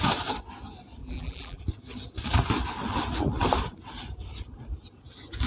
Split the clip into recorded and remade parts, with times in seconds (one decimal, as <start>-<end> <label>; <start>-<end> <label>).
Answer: 0.0-1.0 recorded; 1.0-1.6 remade; 1.6-5.5 recorded